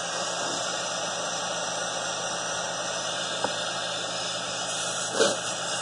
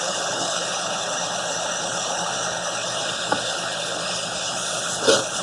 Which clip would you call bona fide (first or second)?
first